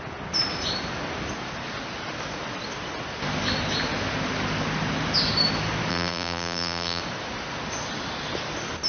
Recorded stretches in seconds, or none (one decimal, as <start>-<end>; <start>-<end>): 0.0-5.9; 7.0-8.9